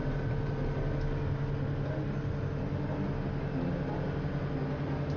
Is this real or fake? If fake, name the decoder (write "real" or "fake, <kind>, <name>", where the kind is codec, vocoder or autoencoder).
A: real